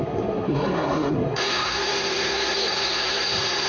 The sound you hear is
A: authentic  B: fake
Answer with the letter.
B